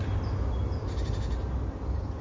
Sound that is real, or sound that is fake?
real